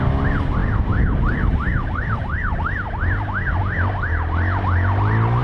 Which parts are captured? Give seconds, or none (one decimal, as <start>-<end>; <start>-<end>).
0.0-5.4